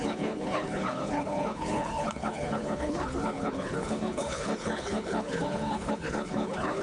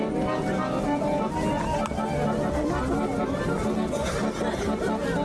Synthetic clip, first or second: first